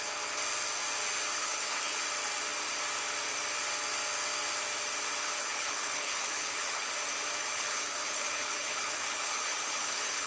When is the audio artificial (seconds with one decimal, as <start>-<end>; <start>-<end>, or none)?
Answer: 1.4-2.0; 5.4-6.9; 7.4-10.3